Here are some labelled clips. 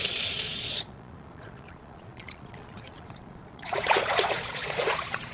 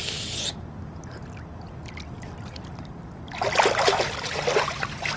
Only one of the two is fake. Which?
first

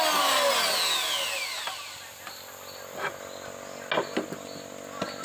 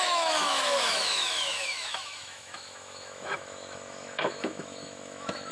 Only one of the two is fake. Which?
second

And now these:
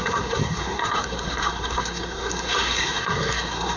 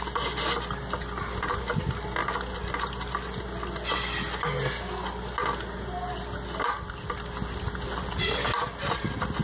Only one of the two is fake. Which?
first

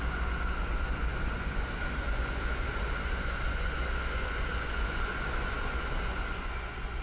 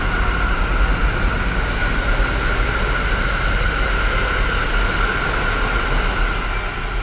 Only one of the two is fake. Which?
first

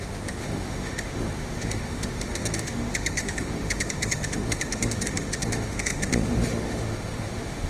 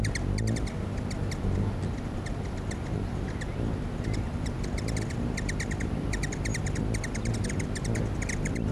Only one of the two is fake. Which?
first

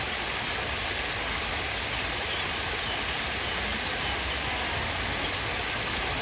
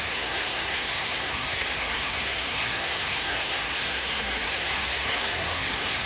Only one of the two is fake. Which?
second